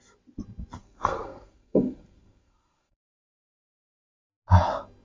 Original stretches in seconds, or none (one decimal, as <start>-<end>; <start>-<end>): 0.0-0.8; 3.3-5.0